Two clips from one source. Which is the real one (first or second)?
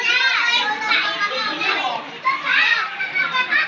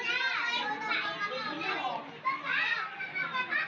second